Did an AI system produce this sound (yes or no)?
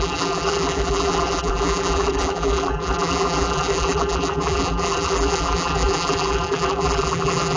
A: yes